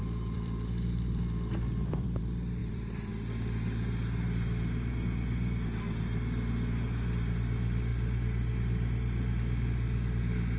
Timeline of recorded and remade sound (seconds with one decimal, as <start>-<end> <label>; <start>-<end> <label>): 0.0-2.2 remade; 2.2-2.6 recorded; 2.6-3.1 remade; 3.1-10.6 recorded